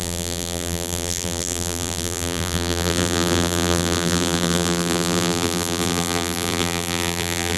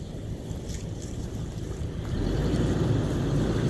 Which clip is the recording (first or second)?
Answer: second